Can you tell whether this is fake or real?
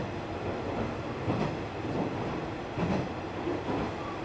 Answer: real